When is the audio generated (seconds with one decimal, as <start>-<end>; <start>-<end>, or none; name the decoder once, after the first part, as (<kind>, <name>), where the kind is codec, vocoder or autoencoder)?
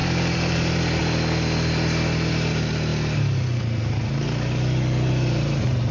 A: none